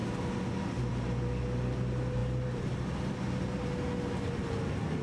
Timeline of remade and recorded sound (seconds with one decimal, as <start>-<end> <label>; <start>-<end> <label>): 0.0-5.0 recorded